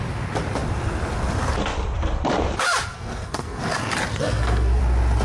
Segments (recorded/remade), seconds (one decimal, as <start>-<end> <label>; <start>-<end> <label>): 0.0-2.9 recorded; 2.9-3.6 remade; 3.6-4.1 recorded; 4.1-4.8 remade; 4.8-5.2 recorded